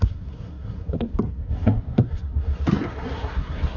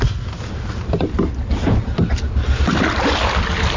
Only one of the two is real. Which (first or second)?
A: second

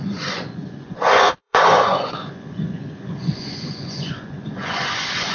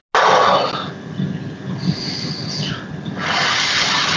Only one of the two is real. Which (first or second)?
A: second